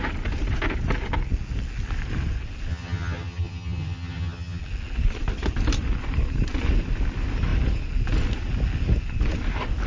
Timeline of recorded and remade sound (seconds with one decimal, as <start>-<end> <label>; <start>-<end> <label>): 0.0-2.7 recorded; 2.7-4.6 remade; 4.6-9.9 recorded